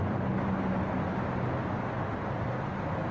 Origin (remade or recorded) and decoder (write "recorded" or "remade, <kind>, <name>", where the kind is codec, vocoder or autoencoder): recorded